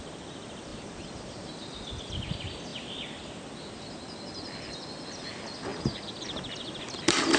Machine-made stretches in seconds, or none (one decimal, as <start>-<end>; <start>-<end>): none